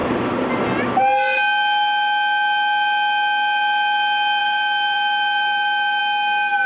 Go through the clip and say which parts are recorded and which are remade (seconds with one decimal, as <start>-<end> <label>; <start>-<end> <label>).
0.0-0.5 remade; 0.5-4.4 recorded; 4.4-6.0 remade; 6.0-6.7 recorded